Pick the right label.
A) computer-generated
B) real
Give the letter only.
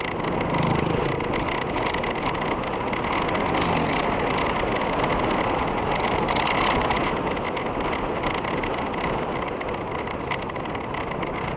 B